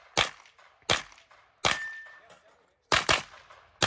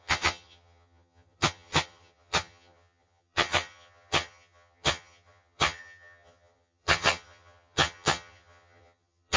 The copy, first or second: second